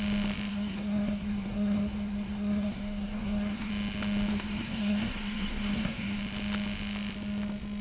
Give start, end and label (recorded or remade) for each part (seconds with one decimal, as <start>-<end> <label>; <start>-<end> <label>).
0.0-0.5 recorded; 0.5-3.7 remade; 3.7-4.3 recorded; 4.3-6.2 remade; 6.2-7.8 recorded